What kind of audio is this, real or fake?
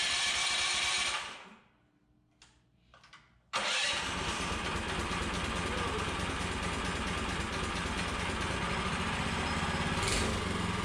real